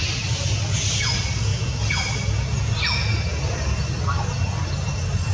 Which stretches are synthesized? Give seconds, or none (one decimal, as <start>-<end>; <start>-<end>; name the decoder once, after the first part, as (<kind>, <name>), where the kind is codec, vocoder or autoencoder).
none